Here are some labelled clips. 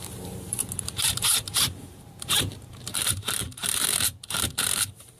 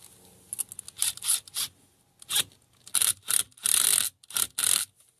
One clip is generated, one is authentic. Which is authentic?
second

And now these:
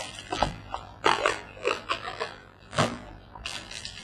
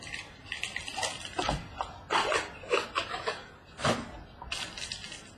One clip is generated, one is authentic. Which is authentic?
second